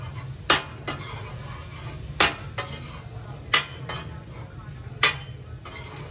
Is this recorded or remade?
recorded